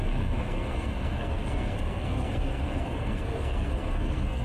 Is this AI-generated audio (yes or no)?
yes